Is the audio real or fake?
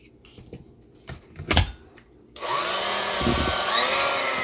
real